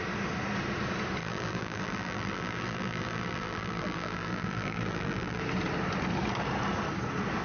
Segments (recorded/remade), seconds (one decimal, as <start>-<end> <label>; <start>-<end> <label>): 0.0-1.2 recorded; 1.2-5.4 remade; 5.4-7.4 recorded